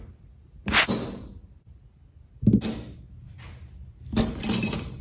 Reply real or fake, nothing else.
real